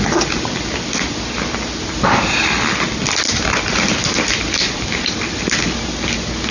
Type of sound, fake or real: real